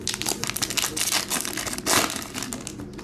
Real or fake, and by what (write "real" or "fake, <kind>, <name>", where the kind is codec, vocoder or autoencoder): real